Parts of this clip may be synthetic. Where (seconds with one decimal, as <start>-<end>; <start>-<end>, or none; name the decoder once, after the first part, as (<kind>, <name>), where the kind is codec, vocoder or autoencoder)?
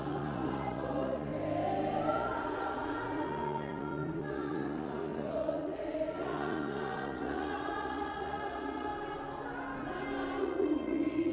0.0-1.3 (vocoder, Vocos); 2.1-8.9; 10.4-11.3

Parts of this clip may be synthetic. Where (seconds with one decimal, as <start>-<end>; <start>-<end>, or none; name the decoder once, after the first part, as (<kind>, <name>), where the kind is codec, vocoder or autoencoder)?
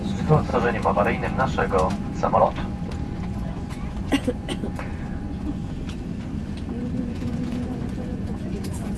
0.0-5.6 (vocoder, Vocos); 6.8-9.0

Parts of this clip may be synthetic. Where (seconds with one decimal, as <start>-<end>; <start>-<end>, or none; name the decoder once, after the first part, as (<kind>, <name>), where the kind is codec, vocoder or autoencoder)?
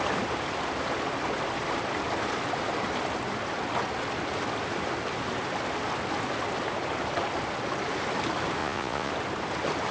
8.6-9.1 (vocoder, Vocos)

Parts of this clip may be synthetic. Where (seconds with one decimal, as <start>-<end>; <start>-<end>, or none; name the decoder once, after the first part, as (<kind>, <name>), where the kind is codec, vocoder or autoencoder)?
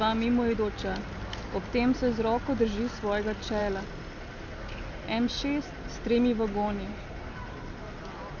none